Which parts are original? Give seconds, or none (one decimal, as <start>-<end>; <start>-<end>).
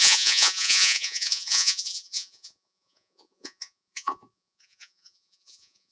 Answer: none